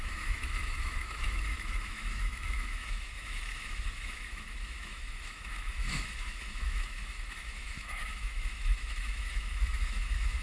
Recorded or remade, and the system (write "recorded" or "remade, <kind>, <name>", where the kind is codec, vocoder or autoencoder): remade, autoencoder, DAC-VAE